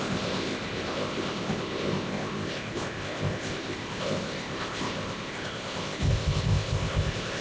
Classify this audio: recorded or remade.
remade